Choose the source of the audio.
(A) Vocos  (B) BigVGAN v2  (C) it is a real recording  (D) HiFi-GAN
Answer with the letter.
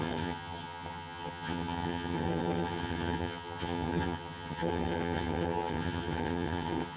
D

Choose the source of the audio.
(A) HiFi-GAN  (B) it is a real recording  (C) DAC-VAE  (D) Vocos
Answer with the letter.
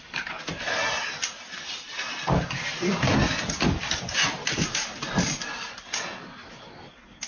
B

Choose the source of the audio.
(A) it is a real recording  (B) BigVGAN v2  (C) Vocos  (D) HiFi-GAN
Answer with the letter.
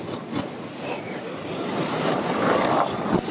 A